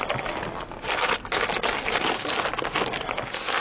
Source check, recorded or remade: recorded